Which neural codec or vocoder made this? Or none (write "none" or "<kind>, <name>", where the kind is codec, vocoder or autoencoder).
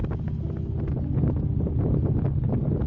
none